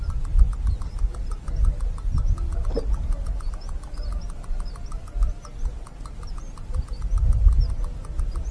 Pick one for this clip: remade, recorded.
recorded